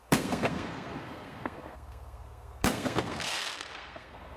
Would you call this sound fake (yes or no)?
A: yes